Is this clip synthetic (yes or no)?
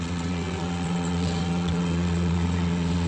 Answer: yes